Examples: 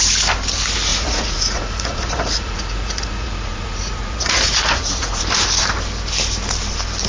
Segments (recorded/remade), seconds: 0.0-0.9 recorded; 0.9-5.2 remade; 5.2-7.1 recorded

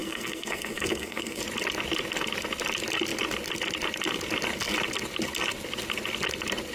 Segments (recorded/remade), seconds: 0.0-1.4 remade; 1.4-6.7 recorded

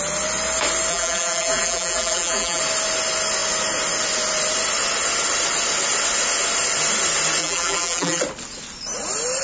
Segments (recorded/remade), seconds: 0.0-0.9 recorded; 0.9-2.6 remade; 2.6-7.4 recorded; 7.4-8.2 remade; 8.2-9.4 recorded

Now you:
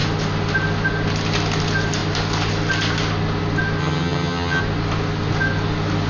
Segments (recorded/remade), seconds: 0.0-3.8 recorded; 3.8-4.6 remade; 4.6-6.1 recorded

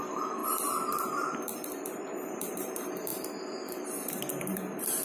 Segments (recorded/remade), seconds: 0.0-0.4 remade; 0.4-0.9 recorded; 0.9-1.5 remade; 1.5-2.1 recorded; 2.1-5.0 remade

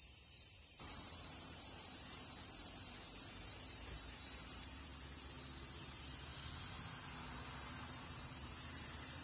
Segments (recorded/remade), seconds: 0.0-4.9 remade; 4.9-5.8 recorded; 5.8-6.3 remade; 6.3-7.7 recorded; 7.7-9.2 remade

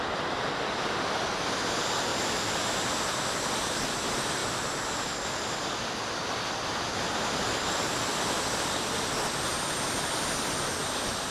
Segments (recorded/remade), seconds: 0.0-11.3 recorded